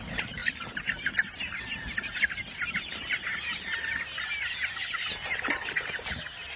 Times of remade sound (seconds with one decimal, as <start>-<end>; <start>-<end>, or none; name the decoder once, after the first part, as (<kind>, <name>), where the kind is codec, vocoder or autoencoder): none